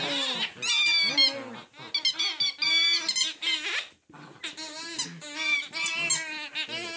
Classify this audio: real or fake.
real